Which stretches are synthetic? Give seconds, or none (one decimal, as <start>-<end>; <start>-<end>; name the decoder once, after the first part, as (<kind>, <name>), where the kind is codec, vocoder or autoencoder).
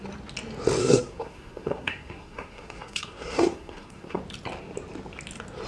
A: 0.8-4.2 (codec, SNAC)